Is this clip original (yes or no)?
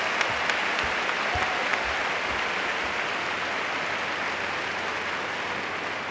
yes